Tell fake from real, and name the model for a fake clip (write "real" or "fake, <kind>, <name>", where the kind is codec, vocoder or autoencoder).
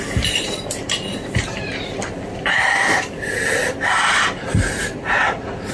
fake, vocoder, BigVGAN v2